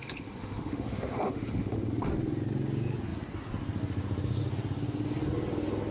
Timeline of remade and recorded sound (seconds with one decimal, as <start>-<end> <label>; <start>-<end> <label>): 0.0-1.9 remade; 1.9-5.9 recorded

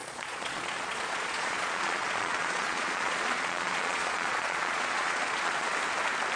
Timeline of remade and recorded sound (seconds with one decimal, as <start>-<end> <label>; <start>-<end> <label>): 0.0-5.7 remade; 5.7-6.4 recorded

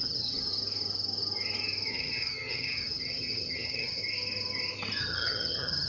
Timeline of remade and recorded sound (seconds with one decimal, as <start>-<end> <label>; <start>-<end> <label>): 0.0-0.5 remade; 0.5-1.9 recorded; 1.9-4.0 remade; 4.0-5.0 recorded; 5.0-5.9 remade

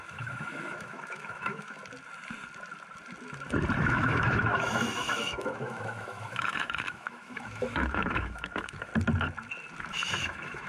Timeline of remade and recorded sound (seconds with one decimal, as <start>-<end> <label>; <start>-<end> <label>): 0.0-1.8 remade; 1.8-3.8 recorded; 3.8-8.9 remade; 8.9-9.8 recorded; 9.8-10.7 remade

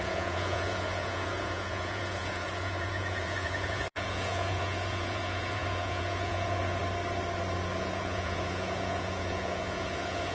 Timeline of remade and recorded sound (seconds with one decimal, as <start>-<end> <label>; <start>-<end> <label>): 0.0-6.8 remade; 6.8-7.8 recorded; 7.8-10.3 remade

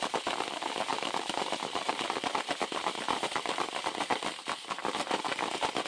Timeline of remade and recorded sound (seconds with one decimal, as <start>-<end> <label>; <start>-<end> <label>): 0.0-0.9 recorded; 0.9-3.6 remade; 3.6-5.9 recorded

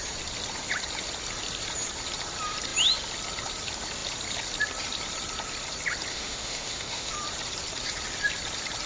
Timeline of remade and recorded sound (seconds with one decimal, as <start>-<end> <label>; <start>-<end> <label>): 0.0-6.1 recorded; 6.1-7.1 remade; 7.1-8.9 recorded

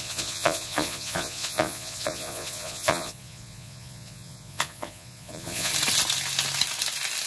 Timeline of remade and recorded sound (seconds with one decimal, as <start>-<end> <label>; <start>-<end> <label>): 0.0-5.7 remade; 5.7-7.3 recorded